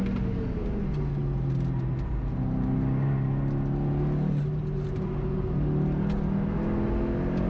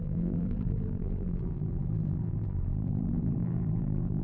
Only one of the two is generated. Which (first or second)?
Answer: second